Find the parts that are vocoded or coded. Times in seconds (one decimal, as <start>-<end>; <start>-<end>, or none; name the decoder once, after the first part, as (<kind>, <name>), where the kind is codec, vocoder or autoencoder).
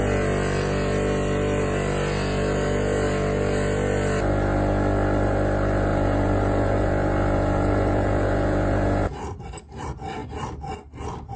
5.9-9.1 (vocoder, Vocos)